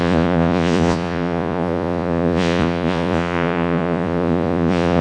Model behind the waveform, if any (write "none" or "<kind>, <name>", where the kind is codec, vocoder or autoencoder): vocoder, Vocos